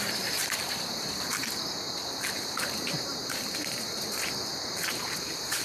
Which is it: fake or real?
fake